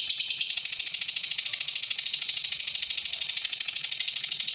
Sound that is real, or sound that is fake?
fake